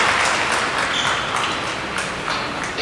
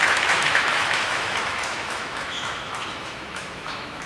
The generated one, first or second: second